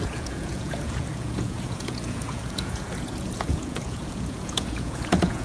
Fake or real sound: fake